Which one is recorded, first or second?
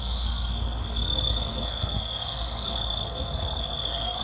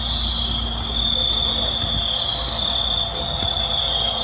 second